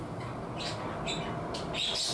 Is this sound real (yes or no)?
yes